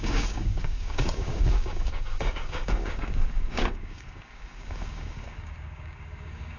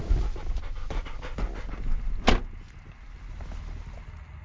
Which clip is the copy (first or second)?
first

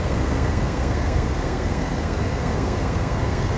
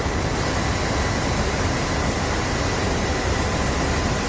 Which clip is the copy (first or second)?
first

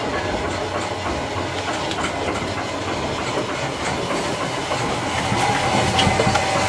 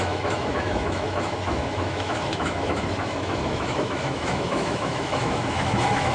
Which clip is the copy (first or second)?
second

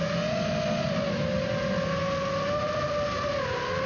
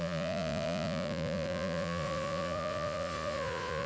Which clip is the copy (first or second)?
second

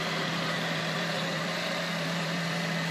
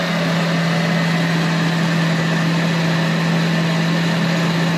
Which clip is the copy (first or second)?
first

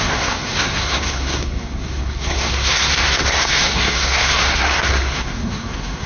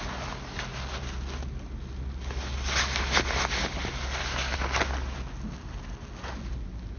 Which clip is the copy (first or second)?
first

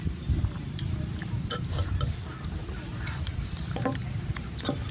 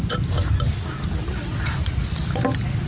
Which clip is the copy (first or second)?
first